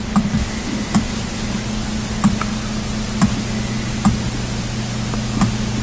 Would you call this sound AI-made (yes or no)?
no